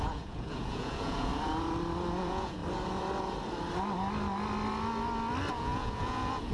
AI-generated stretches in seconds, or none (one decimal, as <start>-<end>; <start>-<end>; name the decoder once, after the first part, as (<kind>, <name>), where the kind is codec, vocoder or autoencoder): 0.0-1.3 (vocoder, Vocos); 2.2-2.6; 5.5-6.5